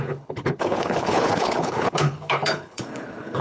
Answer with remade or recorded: remade